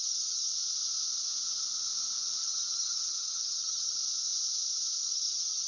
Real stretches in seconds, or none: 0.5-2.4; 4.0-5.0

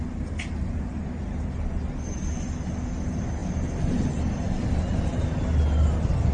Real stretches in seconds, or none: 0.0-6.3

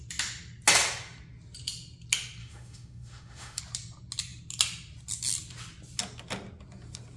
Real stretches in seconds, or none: 0.0-2.4; 3.6-7.2